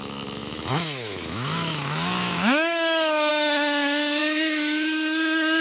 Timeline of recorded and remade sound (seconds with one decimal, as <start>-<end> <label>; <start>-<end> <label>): 0.0-5.6 remade